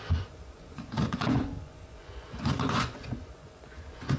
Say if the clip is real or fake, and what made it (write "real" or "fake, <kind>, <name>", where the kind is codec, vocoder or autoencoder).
fake, vocoder, Vocos